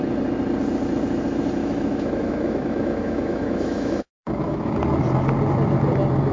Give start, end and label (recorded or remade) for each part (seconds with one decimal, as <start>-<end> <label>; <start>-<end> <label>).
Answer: 0.0-1.6 recorded; 1.6-4.8 remade; 4.8-6.3 recorded